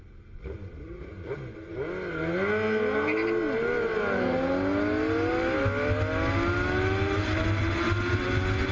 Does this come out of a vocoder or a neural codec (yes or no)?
no